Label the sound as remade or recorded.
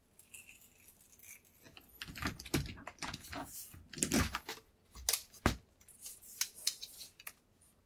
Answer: recorded